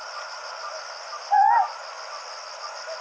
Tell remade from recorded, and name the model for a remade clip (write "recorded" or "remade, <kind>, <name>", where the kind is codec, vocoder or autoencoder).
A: recorded